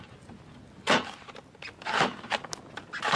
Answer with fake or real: real